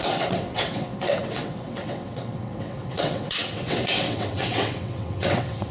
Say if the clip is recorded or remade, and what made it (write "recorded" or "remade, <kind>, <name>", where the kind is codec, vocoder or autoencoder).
remade, vocoder, WaveNeXt